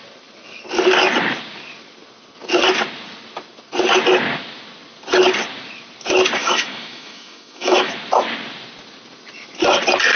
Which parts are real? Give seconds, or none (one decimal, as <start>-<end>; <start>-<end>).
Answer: 0.0-6.4; 7.9-10.2

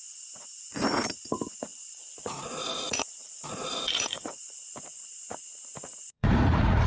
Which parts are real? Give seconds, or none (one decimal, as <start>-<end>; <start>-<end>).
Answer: none

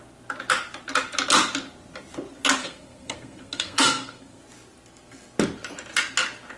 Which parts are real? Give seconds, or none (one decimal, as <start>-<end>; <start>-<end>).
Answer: 0.0-2.6; 4.4-6.6

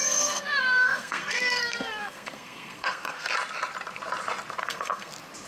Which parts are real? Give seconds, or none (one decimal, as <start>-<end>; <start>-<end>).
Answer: 3.3-4.6; 5.1-5.5

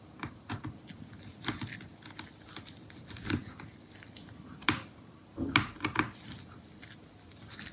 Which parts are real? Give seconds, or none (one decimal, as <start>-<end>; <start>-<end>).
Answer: 0.0-7.7

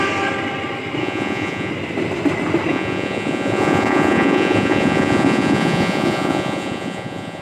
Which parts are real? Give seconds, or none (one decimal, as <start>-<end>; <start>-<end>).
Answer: 0.0-1.0; 1.7-2.7